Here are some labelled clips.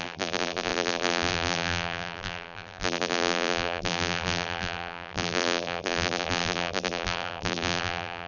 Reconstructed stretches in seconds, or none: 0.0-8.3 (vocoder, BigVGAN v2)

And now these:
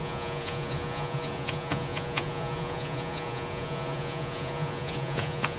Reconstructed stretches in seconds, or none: 0.0-5.6 (vocoder, Vocos)

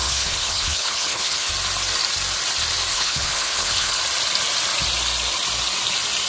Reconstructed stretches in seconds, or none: 0.0-1.5 (codec, HILCodec); 2.9-4.0

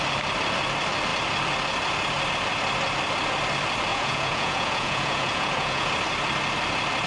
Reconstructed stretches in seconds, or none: 3.9-5.9 (vocoder, Vocos)